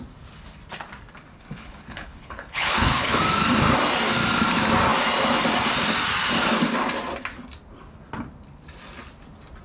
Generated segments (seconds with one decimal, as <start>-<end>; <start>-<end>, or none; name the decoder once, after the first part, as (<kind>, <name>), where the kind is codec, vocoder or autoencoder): 1.6-3.2 (codec, HILCodec)